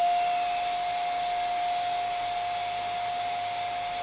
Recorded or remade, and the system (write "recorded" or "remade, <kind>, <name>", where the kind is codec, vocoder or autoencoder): recorded